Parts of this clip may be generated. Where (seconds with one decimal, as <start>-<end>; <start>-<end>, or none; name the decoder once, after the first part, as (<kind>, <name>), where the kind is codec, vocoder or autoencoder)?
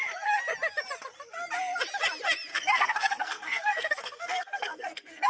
2.5-5.3 (codec, SNAC)